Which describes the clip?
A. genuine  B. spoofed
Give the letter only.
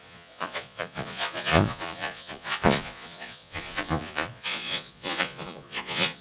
B